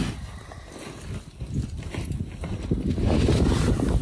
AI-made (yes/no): no